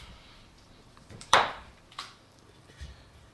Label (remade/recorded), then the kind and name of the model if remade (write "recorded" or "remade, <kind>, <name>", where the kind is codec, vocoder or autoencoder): remade, vocoder, BigVGAN v2